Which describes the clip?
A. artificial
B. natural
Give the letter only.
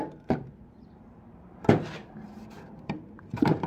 A